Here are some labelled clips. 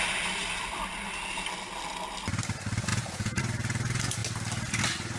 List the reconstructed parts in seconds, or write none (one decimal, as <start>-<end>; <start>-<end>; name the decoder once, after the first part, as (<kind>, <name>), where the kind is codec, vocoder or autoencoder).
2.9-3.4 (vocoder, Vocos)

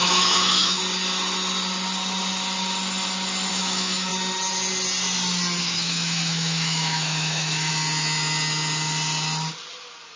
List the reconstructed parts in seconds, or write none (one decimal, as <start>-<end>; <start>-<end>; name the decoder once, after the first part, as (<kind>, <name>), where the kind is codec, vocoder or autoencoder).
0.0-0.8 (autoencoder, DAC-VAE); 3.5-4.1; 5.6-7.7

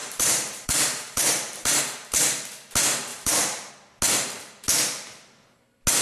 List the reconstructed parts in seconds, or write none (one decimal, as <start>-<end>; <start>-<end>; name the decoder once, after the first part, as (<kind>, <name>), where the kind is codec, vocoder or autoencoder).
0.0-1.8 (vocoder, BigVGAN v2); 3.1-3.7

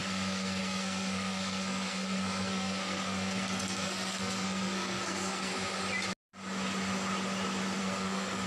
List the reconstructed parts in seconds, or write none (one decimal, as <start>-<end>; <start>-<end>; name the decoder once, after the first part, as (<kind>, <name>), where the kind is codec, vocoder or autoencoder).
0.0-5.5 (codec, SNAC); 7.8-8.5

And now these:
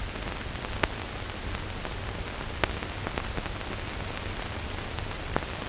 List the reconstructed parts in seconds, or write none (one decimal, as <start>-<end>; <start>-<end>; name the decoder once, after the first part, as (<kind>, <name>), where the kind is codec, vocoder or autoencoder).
none

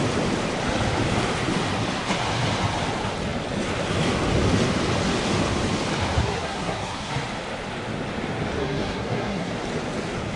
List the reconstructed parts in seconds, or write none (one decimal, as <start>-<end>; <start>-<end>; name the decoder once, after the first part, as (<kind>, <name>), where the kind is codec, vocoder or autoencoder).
6.2-7.1 (codec, SNAC); 8.6-9.5